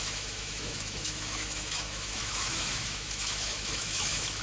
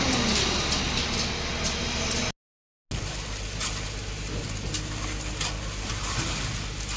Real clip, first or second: second